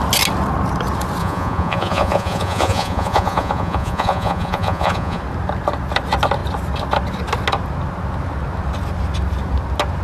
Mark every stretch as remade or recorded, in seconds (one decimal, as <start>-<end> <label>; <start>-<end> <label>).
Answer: 0.0-1.2 recorded; 1.2-5.2 remade; 5.2-10.0 recorded